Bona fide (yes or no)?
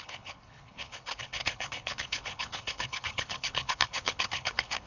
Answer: no